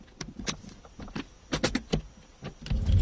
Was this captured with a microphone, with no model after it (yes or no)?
yes